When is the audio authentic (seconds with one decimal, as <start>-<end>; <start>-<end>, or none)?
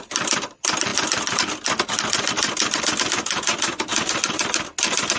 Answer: 0.0-5.2